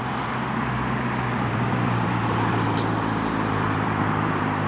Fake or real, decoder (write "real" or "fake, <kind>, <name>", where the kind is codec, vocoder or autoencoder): fake, vocoder, BigVGAN v2